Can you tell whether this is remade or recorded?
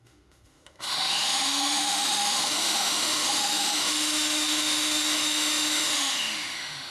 remade